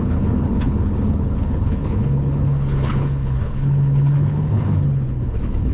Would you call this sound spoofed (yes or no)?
yes